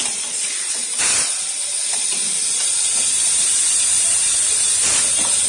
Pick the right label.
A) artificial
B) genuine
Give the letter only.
B